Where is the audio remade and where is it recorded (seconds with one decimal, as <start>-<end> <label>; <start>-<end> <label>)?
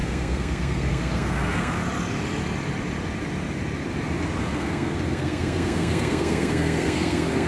0.0-1.8 remade; 1.8-4.4 recorded; 4.4-7.5 remade